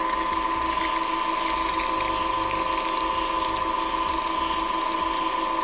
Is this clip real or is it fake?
real